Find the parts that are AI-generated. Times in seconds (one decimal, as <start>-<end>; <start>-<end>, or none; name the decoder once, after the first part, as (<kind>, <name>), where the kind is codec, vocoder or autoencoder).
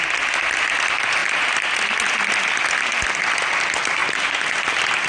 none